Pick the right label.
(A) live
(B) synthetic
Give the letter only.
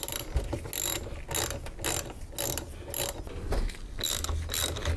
A